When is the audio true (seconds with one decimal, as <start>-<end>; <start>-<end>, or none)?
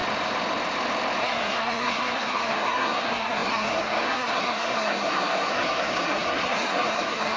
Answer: 0.0-1.2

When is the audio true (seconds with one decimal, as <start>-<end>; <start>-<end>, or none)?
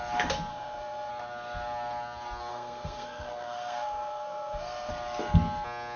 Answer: 0.0-0.5; 1.1-2.5; 4.9-6.0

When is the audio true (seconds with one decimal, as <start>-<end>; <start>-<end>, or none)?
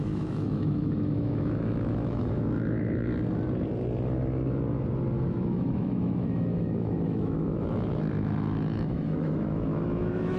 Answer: 3.1-5.3